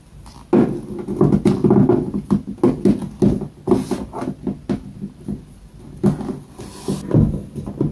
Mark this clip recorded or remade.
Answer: recorded